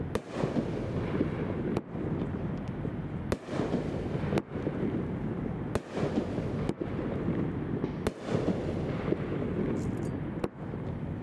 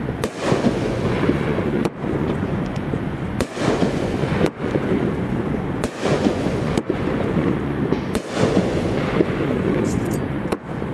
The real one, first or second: first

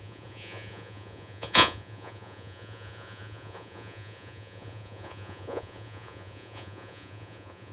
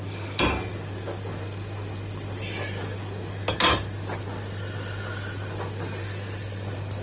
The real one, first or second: second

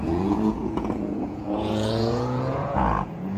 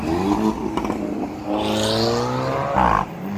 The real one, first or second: second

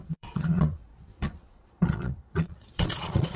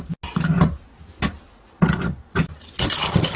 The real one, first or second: second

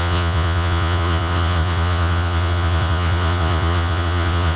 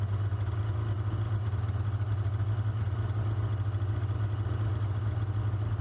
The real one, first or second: second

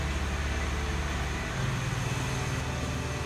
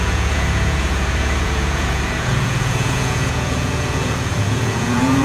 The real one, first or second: first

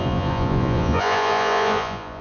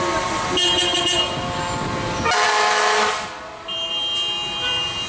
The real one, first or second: second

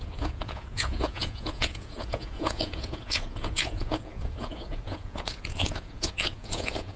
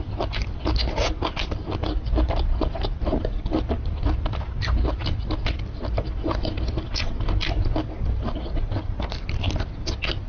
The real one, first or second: second